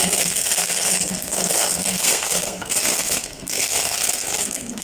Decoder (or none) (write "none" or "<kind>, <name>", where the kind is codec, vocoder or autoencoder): codec, SNAC